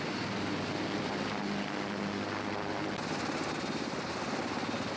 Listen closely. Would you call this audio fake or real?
real